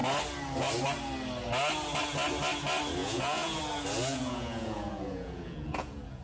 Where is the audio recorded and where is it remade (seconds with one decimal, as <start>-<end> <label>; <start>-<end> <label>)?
0.0-3.0 recorded; 3.0-3.6 remade; 3.6-4.1 recorded; 4.1-6.2 remade